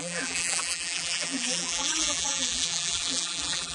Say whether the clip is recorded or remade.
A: remade